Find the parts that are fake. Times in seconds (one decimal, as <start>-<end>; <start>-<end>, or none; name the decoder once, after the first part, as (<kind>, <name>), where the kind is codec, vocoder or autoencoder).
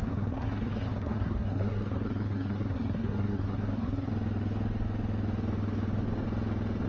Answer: 0.0-4.1 (codec, SNAC)